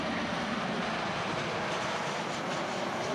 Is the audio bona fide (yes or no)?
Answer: yes